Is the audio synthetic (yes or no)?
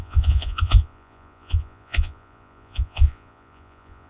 yes